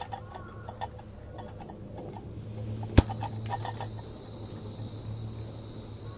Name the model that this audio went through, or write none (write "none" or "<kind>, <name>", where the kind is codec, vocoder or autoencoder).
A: none